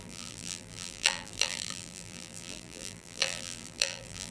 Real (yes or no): no